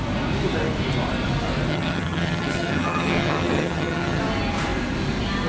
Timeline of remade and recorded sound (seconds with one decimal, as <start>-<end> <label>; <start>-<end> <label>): 0.0-1.7 recorded; 1.7-4.2 remade; 4.2-5.5 recorded